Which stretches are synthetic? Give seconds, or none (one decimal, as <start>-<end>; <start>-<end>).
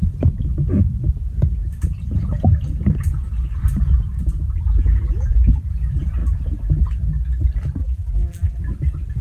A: 7.8-8.6